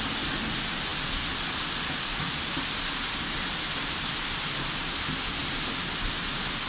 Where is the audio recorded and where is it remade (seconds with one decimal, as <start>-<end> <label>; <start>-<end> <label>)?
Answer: 0.0-5.4 recorded; 5.4-5.9 remade; 5.9-6.7 recorded